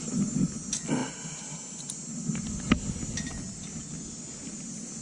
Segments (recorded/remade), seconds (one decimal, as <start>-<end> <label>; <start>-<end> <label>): 0.0-5.0 recorded